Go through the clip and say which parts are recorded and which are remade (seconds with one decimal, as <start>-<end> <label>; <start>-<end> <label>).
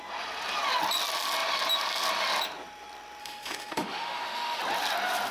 0.0-3.2 recorded; 3.2-4.6 remade; 4.6-5.3 recorded